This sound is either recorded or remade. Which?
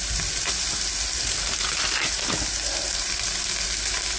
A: recorded